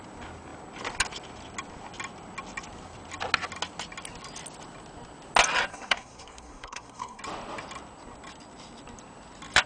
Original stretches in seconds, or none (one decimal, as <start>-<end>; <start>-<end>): 0.0-5.7; 7.2-9.7